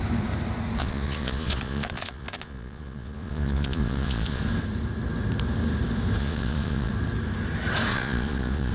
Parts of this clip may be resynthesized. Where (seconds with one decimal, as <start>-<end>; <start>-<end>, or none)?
0.8-4.4; 6.2-6.9; 7.9-8.7